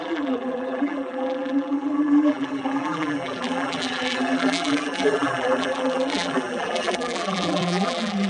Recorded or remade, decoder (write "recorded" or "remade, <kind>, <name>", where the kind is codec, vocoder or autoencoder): remade, vocoder, BigVGAN v2